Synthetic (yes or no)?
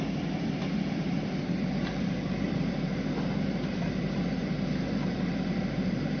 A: yes